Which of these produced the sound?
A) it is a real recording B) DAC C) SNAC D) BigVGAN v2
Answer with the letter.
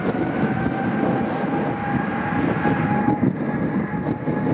A